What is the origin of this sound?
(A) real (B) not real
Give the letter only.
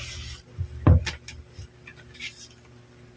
A